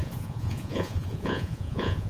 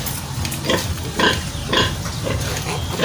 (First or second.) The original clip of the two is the second